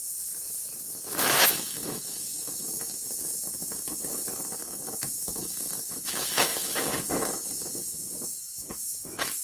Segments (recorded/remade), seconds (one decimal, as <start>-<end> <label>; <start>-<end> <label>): 0.0-9.4 remade